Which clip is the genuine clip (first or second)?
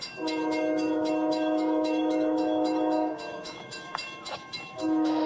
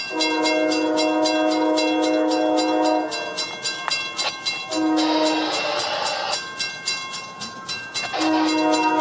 second